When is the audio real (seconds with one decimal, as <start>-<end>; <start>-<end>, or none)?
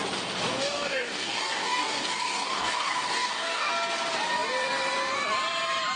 0.0-0.5; 3.7-6.0